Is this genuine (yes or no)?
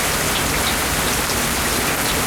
yes